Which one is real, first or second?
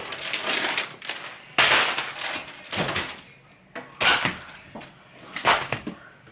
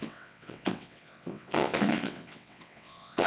first